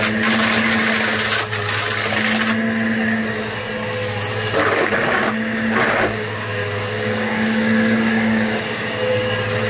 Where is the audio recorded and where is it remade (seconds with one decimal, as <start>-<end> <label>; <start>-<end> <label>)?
0.0-4.6 recorded; 4.6-9.1 remade; 9.1-9.7 recorded